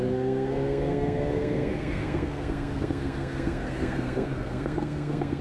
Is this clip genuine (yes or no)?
no